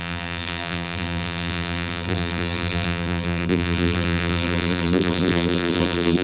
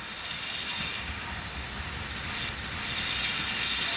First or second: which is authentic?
second